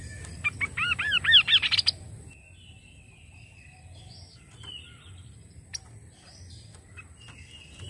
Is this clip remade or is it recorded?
recorded